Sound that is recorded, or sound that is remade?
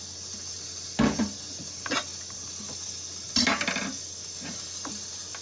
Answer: recorded